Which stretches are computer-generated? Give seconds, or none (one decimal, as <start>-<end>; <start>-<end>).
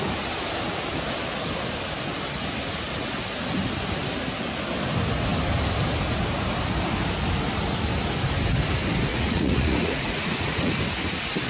9.1-10.7